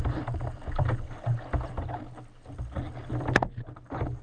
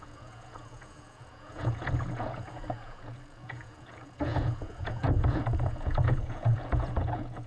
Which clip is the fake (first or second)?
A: second